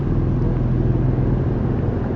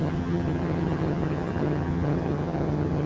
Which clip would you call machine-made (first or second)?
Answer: second